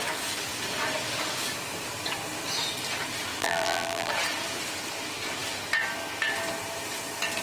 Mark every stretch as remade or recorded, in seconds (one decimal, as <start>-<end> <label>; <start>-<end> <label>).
0.0-3.4 recorded; 3.4-4.1 remade; 4.1-7.4 recorded

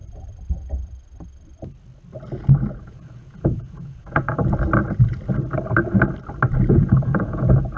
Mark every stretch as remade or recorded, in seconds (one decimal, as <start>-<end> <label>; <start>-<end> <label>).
0.0-2.8 recorded; 2.8-4.4 remade; 4.4-6.7 recorded; 6.7-7.8 remade

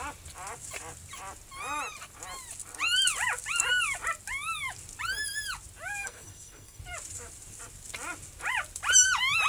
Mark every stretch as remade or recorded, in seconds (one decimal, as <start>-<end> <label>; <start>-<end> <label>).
0.0-6.0 recorded; 6.0-6.8 remade; 6.8-9.5 recorded

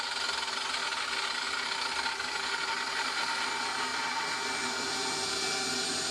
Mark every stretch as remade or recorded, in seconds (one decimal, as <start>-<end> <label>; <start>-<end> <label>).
0.0-6.1 recorded